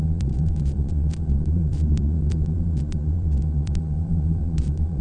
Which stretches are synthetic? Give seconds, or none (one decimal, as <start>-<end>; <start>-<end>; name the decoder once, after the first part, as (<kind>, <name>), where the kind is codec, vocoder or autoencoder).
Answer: 0.0-5.0 (vocoder, Vocos)